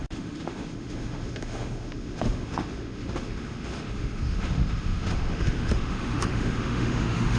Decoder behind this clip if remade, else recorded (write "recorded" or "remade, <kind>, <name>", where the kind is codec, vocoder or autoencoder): remade, autoencoder, DAC-VAE